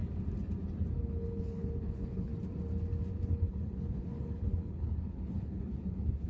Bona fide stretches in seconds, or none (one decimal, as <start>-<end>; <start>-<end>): 0.0-1.0; 2.3-3.2